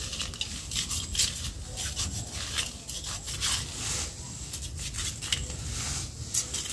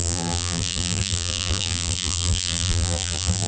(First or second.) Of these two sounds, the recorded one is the first